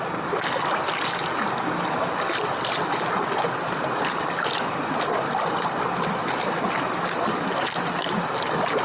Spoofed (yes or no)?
no